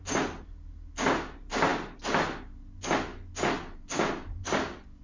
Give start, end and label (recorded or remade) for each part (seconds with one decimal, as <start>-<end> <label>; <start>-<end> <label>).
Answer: 0.0-5.0 recorded